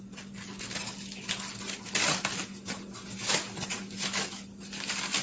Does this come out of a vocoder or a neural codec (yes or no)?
no